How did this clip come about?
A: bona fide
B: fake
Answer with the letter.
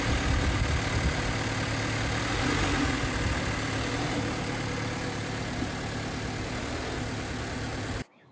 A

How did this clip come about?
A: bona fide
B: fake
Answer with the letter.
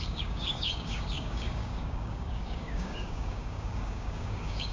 B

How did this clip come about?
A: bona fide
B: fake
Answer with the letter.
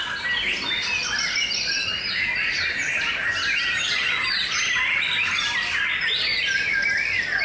A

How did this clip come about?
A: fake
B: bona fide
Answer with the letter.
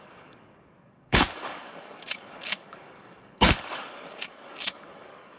A